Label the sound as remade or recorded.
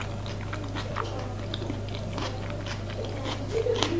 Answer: recorded